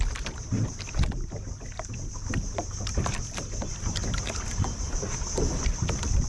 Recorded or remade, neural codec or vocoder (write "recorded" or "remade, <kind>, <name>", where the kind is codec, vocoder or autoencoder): recorded